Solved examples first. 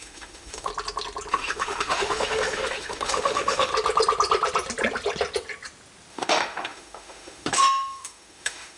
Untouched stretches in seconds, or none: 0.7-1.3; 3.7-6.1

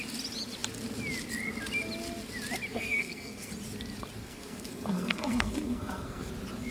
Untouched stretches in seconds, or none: 0.0-2.7; 3.5-4.2; 6.3-6.7

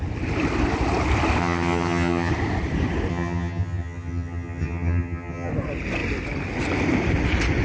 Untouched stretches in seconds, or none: 0.0-1.4; 2.3-3.1; 5.5-7.6

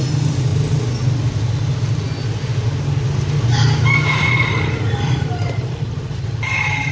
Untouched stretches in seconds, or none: 0.0-6.9